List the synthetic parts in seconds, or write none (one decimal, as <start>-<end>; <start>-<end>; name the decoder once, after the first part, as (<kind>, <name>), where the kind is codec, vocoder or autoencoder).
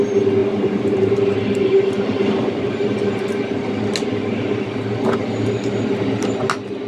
0.4-2.6 (vocoder, BigVGAN v2)